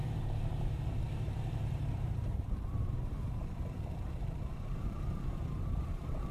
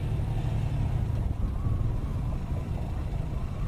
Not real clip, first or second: first